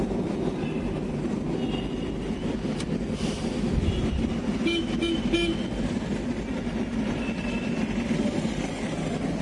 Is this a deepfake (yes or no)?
no